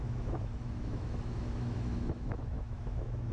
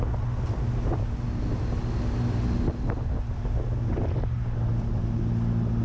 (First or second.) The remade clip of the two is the first